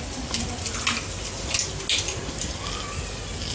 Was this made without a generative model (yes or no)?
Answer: yes